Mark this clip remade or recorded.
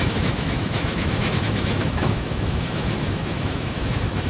remade